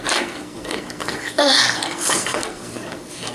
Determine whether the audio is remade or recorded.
remade